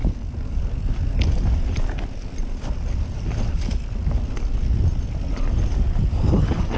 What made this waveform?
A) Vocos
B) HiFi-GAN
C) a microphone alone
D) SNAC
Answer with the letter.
C